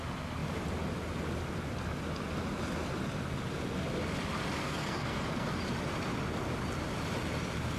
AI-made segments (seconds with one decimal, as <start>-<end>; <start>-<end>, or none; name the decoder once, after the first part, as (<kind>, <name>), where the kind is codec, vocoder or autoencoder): 4.6-5.6 (codec, SNAC)